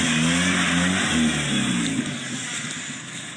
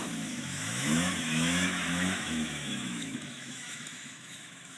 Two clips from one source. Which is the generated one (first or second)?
second